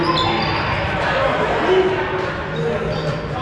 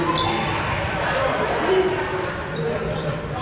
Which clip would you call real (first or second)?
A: first